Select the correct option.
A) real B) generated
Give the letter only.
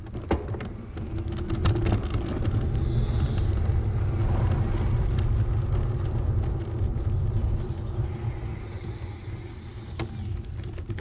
A